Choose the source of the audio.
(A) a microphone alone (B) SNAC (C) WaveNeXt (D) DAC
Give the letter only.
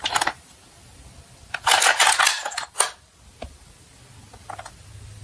A